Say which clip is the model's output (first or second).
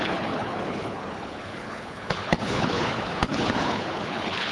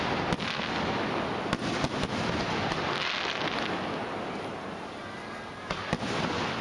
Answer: first